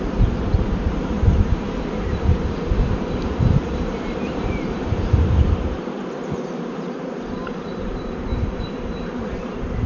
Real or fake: fake